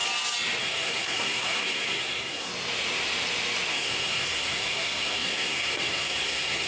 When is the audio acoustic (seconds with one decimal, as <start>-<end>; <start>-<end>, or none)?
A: 0.0-0.6; 2.5-3.7